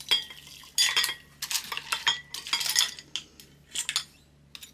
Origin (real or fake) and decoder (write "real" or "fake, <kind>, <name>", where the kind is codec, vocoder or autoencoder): real